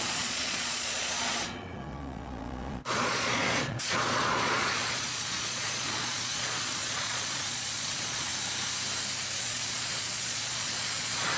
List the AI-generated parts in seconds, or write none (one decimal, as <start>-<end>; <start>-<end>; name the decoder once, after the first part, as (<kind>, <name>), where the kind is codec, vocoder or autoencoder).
0.0-8.3 (vocoder, Vocos); 9.4-11.4